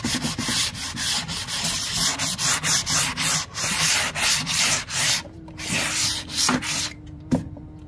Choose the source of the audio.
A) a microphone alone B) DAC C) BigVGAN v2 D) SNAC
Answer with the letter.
A